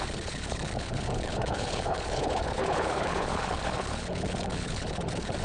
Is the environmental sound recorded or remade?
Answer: remade